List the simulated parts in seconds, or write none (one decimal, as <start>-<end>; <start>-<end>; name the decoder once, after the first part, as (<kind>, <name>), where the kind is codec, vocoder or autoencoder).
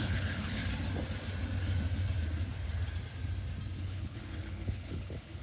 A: 0.0-0.6 (codec, HILCodec); 3.8-5.4